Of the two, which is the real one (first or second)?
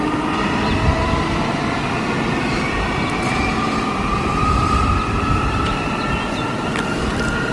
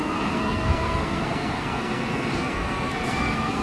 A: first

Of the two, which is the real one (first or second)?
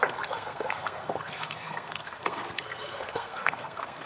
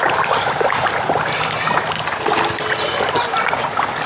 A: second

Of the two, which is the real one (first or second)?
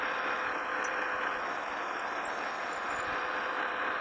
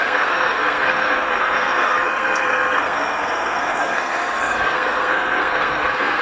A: first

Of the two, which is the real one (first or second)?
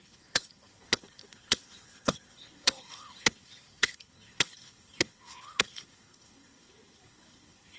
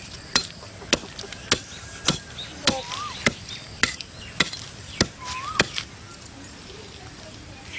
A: second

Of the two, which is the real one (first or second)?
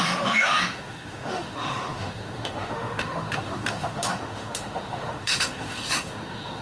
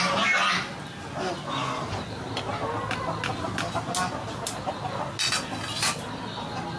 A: second